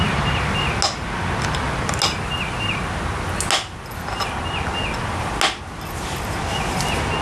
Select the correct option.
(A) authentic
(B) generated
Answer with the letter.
A